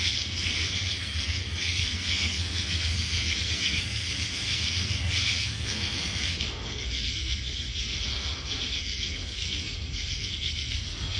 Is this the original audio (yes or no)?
no